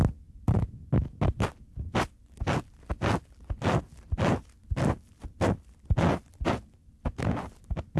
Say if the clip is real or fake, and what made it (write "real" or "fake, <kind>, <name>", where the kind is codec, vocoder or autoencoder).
real